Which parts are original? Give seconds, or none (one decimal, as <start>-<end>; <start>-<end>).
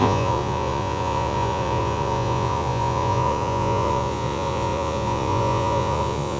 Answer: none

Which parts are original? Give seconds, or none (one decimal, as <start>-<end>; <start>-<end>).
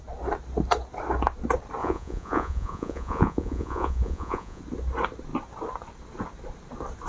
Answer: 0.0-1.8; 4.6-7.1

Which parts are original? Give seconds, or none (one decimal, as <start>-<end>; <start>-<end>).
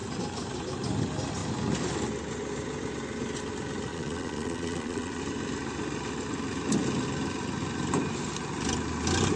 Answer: 0.0-3.9; 5.2-9.4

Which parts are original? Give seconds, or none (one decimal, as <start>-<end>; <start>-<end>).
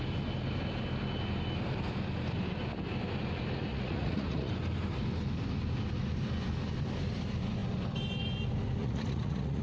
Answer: 0.0-3.7; 4.5-8.8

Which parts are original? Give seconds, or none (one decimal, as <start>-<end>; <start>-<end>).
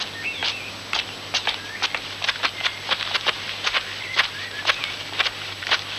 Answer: 0.0-6.0